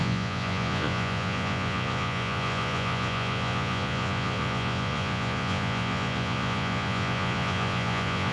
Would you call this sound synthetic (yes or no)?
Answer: yes